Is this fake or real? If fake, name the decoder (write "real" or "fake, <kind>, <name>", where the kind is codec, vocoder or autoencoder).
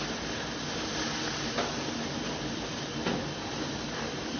real